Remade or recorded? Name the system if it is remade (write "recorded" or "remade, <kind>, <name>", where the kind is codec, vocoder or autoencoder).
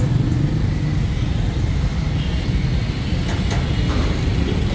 recorded